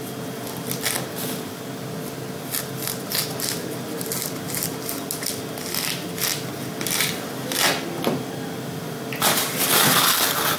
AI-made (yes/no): no